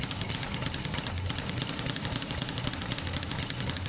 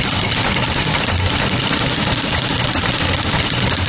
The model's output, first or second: second